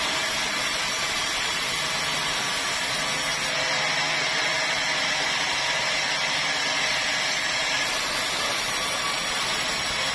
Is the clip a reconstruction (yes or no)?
no